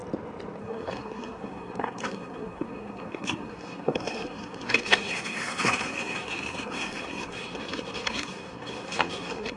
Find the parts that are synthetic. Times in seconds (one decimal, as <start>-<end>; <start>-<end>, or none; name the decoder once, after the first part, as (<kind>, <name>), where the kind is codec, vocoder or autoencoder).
0.6-9.6 (codec, SNAC)